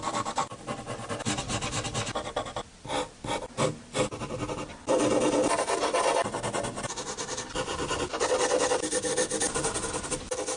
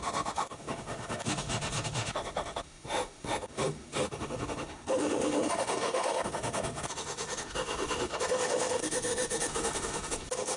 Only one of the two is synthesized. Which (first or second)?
second